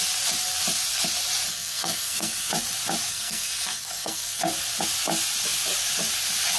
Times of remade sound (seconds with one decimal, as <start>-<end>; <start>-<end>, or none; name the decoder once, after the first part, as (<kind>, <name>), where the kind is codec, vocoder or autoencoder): 1.5-2.5 (codec, SNAC); 3.1-4.4